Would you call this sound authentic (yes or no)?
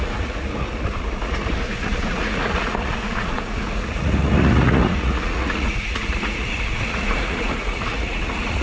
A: no